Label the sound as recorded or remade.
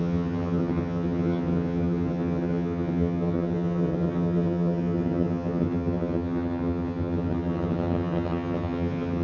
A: remade